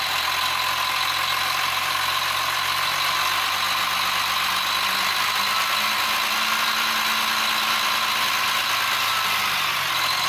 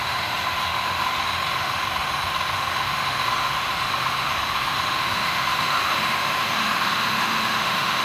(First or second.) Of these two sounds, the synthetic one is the second